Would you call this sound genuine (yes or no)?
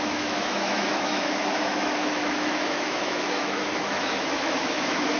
no